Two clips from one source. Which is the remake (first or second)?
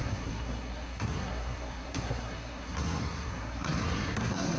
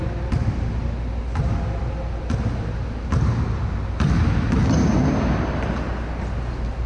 first